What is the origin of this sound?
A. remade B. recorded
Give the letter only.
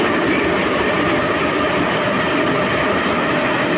B